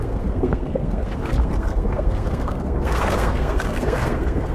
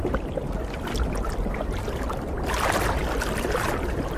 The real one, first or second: second